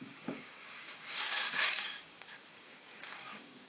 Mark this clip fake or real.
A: fake